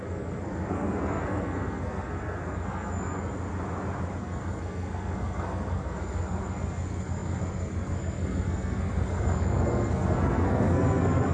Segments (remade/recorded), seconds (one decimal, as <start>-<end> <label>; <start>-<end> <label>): 0.0-3.3 remade; 3.3-4.2 recorded; 4.2-11.3 remade